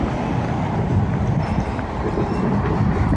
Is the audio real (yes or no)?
yes